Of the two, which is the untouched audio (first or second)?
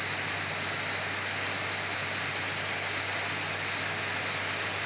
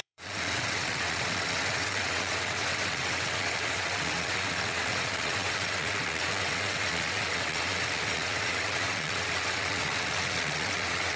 first